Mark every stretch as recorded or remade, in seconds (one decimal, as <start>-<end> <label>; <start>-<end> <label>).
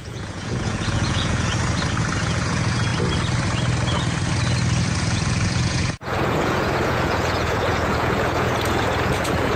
0.0-1.5 remade; 1.5-2.2 recorded; 2.2-2.9 remade; 2.9-5.0 recorded; 5.0-9.6 remade